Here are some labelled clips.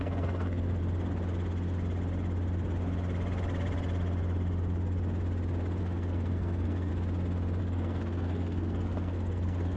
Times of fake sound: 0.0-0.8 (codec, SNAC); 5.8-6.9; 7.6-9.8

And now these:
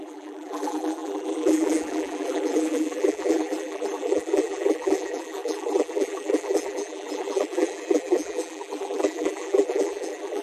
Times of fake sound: 0.0-10.4 (vocoder, BigVGAN v2)

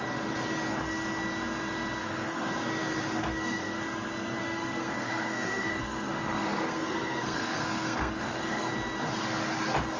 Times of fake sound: 2.0-2.5 (codec, SNAC); 3.2-3.8; 4.4-8.7

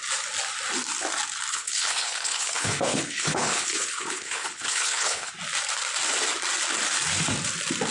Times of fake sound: 1.5-5.3 (codec, HILCodec)

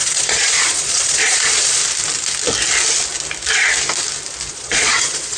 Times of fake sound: 0.0-1.8 (vocoder, Vocos); 4.5-5.4

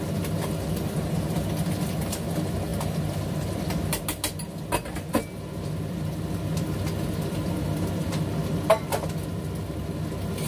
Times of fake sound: none

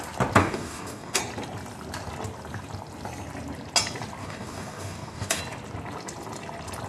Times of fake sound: 0.4-1.2 (codec, DAC); 4.2-5.4

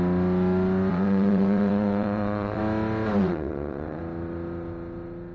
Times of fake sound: 0.9-2.6 (vocoder, WaveNeXt); 3.2-4.0